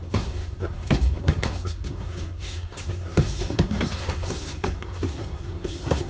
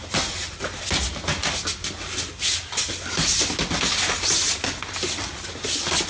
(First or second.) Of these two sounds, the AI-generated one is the first